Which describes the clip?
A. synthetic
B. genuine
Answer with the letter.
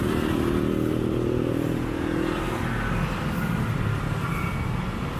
B